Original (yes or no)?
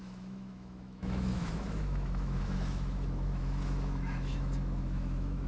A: no